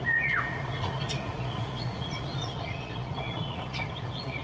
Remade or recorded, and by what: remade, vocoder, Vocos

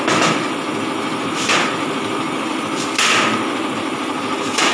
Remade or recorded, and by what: recorded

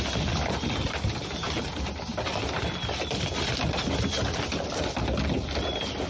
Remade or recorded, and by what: recorded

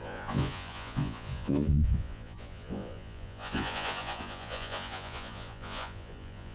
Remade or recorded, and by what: remade, vocoder, Vocos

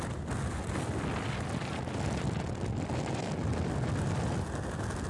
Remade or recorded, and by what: recorded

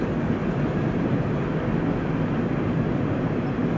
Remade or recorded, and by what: recorded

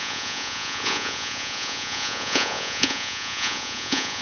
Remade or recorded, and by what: remade, vocoder, Vocos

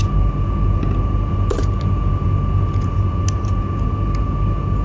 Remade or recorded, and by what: recorded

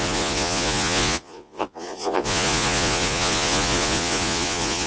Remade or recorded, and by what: remade, vocoder, Vocos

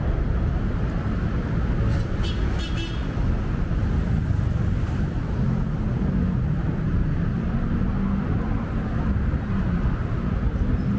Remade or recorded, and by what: recorded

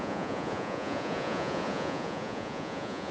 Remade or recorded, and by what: remade, vocoder, Vocos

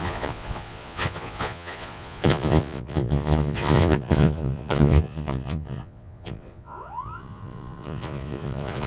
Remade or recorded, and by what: remade, vocoder, Vocos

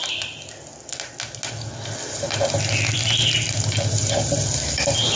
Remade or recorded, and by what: recorded